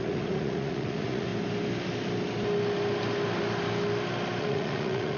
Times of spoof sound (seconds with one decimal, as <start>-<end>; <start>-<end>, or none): 0.0-1.3; 4.4-5.2